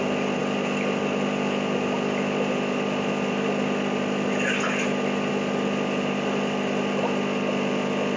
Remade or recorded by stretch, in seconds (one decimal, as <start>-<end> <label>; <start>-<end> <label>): 0.0-8.2 recorded